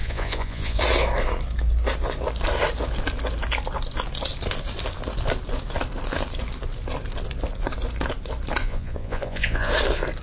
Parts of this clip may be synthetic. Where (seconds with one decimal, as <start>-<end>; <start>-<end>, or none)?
0.0-0.8; 8.6-9.7